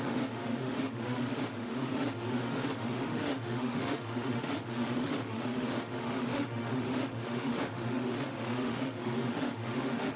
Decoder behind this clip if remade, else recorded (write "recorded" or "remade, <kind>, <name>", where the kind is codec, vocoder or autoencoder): remade, autoencoder, DAC-VAE